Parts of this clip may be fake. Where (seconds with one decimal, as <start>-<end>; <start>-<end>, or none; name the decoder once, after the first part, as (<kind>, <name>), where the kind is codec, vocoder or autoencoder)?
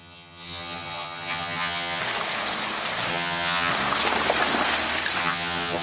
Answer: 0.0-2.0 (vocoder, HiFi-GAN); 3.1-3.7; 5.2-5.8